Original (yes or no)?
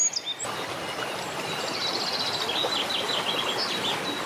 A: yes